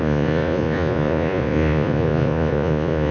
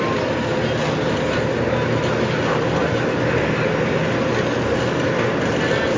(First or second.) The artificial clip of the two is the first